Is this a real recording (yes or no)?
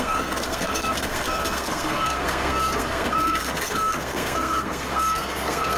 no